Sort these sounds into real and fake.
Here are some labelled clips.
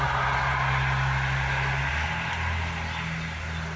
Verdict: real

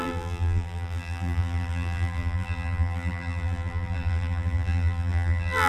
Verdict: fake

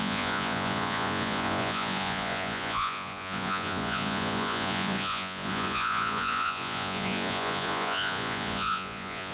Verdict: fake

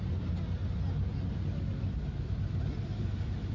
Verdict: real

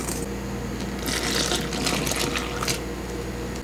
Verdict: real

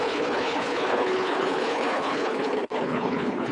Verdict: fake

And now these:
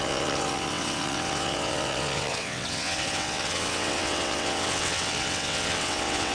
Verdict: fake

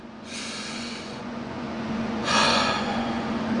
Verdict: fake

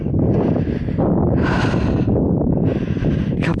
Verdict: real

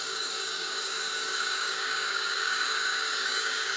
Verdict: fake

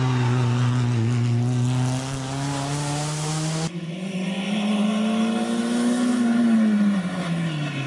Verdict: real